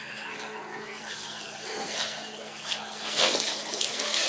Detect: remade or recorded remade